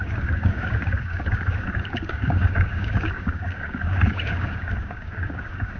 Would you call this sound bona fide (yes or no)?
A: no